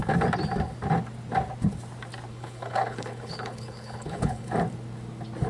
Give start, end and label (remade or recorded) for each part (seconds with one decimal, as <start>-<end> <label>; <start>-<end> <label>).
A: 0.0-2.3 recorded; 2.3-4.5 remade; 4.5-5.5 recorded